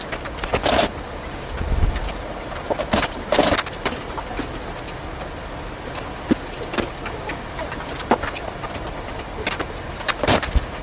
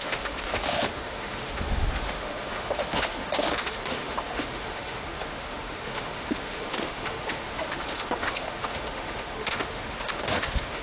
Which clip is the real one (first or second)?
first